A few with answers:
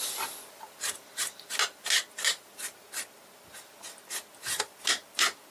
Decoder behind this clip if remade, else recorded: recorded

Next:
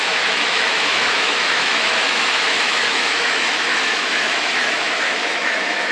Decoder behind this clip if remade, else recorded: remade, autoencoder, DAC-VAE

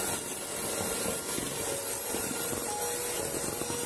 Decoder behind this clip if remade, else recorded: recorded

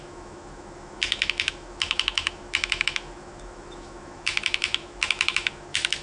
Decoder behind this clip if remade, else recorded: remade, autoencoder, DAC-VAE